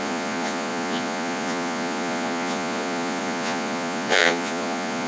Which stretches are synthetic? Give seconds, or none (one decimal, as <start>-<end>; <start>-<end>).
0.0-5.1